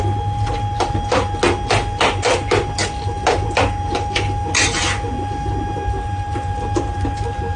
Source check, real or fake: real